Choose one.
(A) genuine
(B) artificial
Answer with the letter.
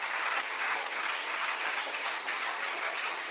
B